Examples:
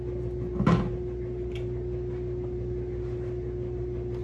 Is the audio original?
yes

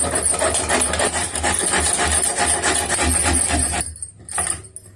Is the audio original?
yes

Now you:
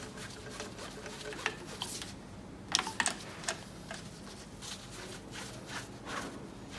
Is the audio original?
yes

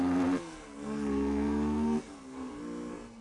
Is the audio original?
no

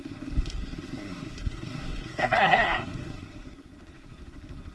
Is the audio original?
no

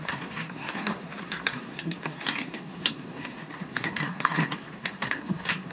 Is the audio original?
no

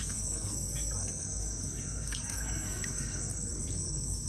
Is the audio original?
no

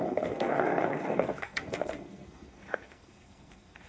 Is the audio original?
no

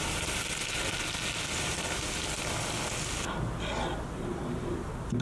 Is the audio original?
yes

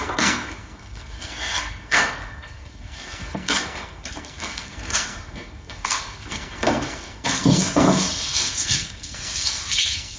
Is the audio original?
no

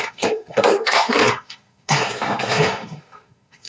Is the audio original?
no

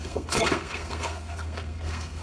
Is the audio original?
no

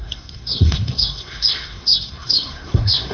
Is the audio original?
no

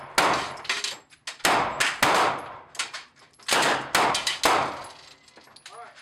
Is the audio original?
yes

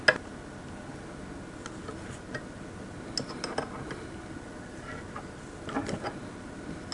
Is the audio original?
yes